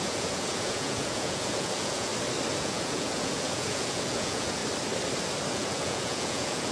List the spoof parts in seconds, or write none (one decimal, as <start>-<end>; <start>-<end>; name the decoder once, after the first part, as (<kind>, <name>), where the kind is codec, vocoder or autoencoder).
0.0-2.1 (vocoder, Vocos); 2.6-4.6; 5.5-6.7